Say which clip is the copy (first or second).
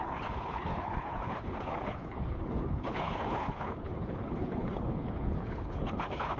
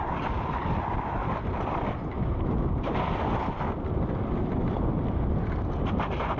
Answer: first